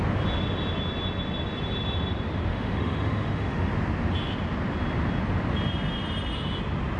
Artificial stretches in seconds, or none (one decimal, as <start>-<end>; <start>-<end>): 2.5-3.7